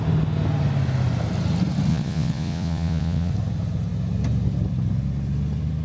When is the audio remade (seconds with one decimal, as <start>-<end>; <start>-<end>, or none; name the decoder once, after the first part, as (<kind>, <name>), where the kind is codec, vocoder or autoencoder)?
1.9-3.3 (vocoder, Vocos)